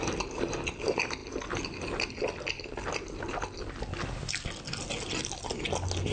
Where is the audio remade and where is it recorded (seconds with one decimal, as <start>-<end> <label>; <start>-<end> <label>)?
0.0-6.1 recorded